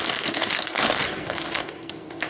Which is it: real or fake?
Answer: fake